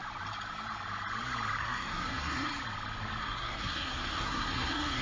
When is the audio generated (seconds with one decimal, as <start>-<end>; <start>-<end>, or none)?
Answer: 1.6-2.5; 3.2-5.0